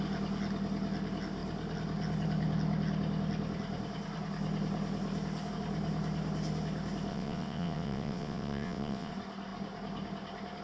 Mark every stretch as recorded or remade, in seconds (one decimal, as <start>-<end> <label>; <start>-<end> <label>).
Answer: 0.0-7.1 recorded; 7.1-9.1 remade; 9.1-10.6 recorded